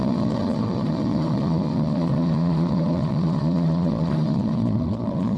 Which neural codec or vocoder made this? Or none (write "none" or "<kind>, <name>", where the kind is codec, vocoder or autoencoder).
vocoder, Vocos